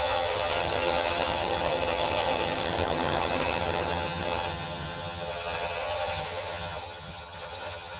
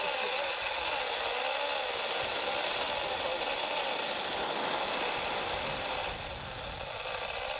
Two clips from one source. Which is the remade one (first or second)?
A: first